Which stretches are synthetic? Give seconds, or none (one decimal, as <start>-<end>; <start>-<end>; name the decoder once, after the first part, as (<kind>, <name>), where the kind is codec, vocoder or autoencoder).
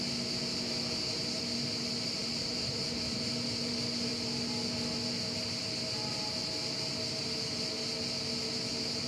2.2-2.7 (vocoder, BigVGAN v2)